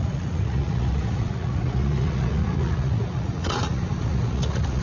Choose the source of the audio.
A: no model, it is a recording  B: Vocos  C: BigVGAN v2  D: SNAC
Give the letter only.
B